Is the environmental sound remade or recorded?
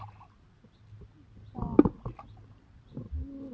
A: remade